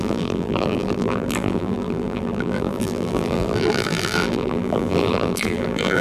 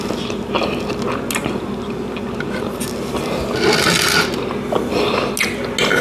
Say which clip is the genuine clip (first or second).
second